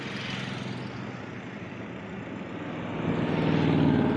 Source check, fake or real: real